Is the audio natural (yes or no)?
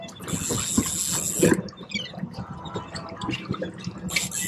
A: yes